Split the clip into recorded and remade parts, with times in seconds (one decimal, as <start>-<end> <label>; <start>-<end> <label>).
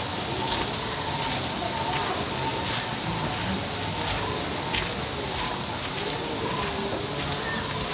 0.0-7.9 recorded